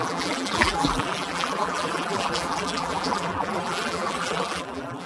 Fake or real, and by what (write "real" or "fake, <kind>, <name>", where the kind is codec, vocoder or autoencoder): fake, vocoder, BigVGAN v2